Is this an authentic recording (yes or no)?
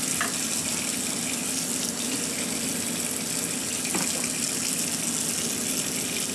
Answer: yes